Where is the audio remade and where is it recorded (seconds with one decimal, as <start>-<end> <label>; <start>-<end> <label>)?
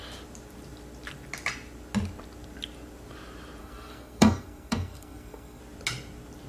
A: 0.0-3.6 recorded; 3.6-5.6 remade; 5.6-6.5 recorded